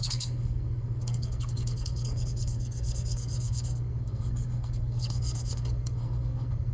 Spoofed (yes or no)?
yes